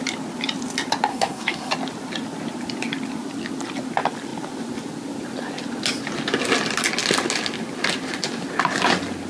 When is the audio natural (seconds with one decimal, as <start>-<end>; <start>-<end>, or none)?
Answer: 0.0-1.1; 1.7-9.3